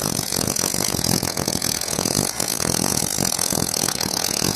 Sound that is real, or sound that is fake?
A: fake